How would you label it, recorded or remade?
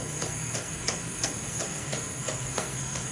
remade